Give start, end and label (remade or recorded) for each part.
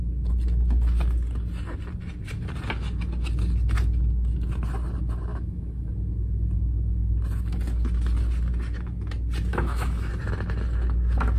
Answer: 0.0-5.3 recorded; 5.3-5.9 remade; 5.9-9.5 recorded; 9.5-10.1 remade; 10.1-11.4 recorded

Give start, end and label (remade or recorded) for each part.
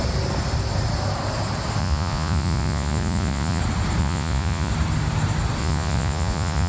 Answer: 0.0-1.8 recorded; 1.8-3.6 remade; 3.6-4.0 recorded; 4.0-4.7 remade; 4.7-5.6 recorded; 5.6-6.7 remade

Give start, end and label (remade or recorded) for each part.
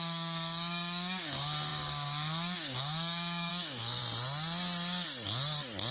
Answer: 0.0-4.0 remade; 4.0-5.9 recorded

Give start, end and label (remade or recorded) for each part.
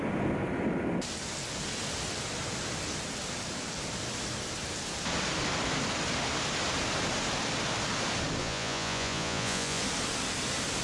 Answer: 0.0-8.4 recorded; 8.4-9.8 remade; 9.8-10.8 recorded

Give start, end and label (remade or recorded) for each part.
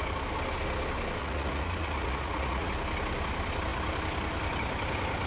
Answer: 0.0-1.2 recorded; 1.2-2.7 remade; 2.7-5.3 recorded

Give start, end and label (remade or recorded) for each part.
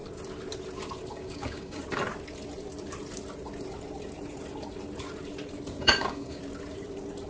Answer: 0.0-1.1 recorded; 1.1-1.8 remade; 1.8-5.8 recorded; 5.8-6.4 remade; 6.4-7.3 recorded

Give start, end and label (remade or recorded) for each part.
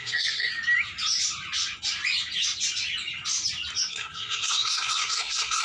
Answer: 0.0-0.5 remade; 0.5-3.9 recorded; 3.9-5.6 remade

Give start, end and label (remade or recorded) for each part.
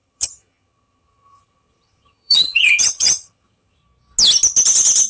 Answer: 0.0-3.8 remade; 3.8-5.1 recorded